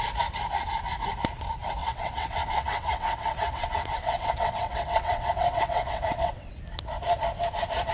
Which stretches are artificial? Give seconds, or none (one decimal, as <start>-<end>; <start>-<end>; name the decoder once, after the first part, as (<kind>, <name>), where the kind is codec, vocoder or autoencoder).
1.8-6.5 (vocoder, WaveNeXt)